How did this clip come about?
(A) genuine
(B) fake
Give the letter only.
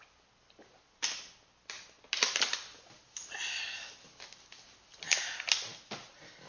A